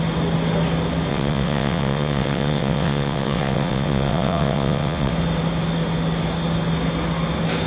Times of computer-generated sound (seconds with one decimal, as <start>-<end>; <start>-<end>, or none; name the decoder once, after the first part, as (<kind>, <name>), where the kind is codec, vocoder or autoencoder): 1.1-5.1 (vocoder, WaveNeXt)